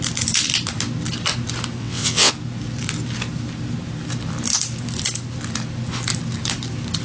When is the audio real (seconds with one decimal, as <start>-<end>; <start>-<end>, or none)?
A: 0.0-1.8; 2.3-7.0